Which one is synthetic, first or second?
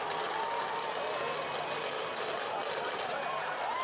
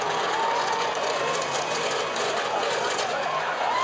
second